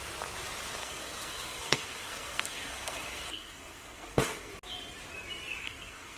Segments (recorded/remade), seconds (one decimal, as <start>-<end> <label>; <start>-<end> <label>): 0.0-0.8 recorded; 0.8-4.5 remade; 4.5-5.6 recorded; 5.6-6.2 remade